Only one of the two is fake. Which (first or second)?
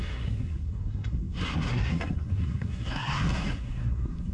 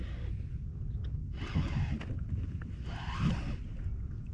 first